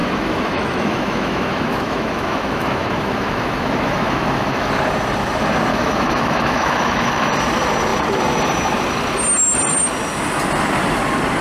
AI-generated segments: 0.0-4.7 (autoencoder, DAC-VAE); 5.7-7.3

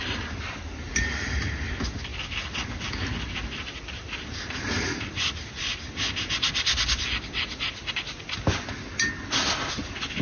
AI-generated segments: none